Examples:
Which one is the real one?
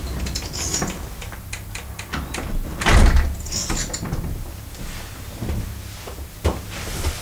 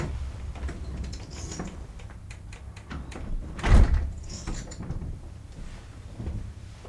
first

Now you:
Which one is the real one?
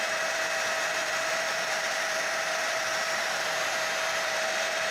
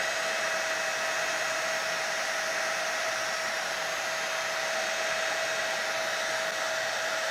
second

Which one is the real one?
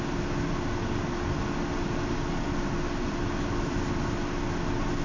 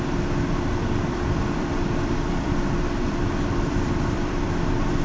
first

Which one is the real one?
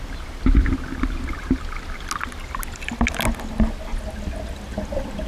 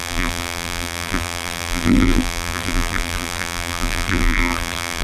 first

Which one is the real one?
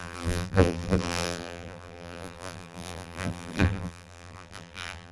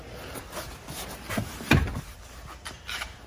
second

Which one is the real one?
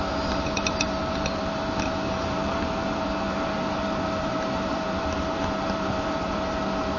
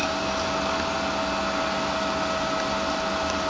second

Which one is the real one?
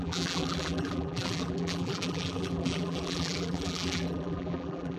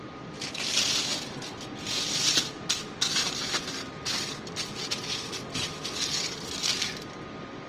second